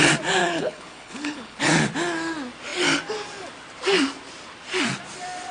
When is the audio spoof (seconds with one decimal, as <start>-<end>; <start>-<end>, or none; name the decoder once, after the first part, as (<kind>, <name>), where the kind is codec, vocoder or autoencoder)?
0.4-1.6 (codec, HILCodec)